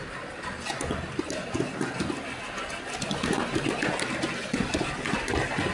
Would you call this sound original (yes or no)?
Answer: yes